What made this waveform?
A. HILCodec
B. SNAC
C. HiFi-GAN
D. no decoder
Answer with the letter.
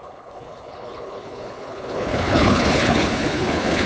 A